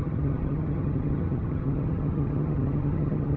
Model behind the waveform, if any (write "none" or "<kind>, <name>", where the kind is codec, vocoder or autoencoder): vocoder, HiFi-GAN